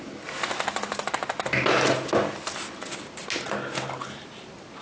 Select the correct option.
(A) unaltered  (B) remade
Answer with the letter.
A